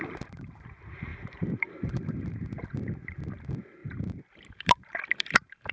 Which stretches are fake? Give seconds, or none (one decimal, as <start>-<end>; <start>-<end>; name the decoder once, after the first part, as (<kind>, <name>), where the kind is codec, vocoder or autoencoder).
0.0-3.8 (vocoder, BigVGAN v2); 4.5-5.7